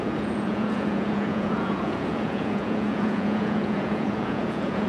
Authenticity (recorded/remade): remade